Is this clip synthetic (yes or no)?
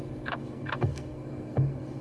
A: yes